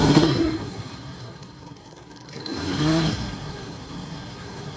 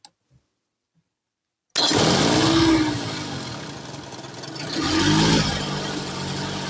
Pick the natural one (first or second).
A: second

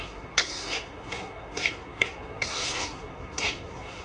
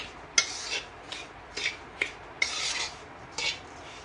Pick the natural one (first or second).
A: second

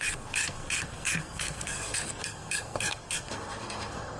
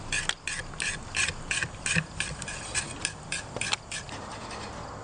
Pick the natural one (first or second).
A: second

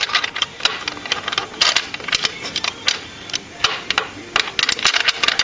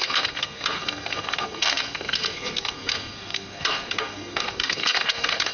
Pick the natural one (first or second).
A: first